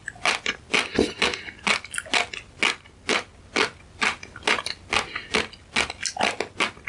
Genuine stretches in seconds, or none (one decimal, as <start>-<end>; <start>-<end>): 0.0-6.9